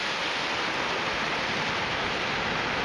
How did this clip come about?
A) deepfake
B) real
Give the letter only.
B